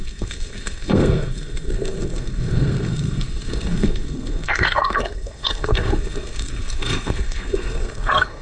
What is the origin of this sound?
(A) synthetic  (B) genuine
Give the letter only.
A